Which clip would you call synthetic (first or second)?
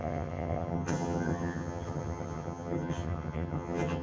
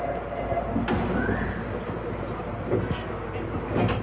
first